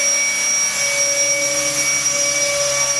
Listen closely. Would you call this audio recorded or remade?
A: recorded